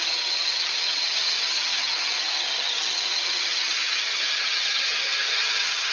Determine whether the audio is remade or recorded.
remade